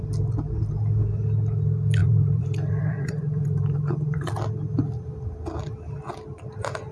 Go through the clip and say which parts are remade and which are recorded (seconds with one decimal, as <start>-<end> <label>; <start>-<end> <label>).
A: 0.0-2.0 recorded; 2.0-4.3 remade; 4.3-6.9 recorded